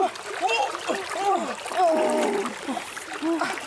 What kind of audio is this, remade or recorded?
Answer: recorded